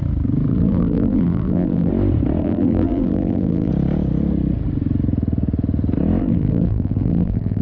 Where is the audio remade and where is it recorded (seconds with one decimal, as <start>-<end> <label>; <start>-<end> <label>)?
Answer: 0.0-0.5 recorded; 0.5-1.9 remade; 1.9-2.4 recorded; 2.4-3.7 remade; 3.7-6.2 recorded; 6.2-7.6 remade